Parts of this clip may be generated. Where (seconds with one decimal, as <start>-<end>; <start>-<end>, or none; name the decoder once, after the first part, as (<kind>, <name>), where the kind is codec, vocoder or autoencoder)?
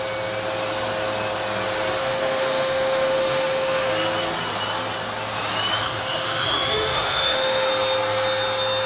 2.0-3.9 (autoencoder, DAC-VAE); 5.8-7.7